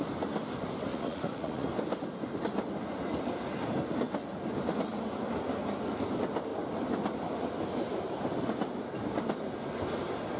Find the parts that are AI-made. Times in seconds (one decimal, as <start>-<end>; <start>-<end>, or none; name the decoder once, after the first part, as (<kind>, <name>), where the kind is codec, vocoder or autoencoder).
0.9-1.7 (vocoder, Vocos)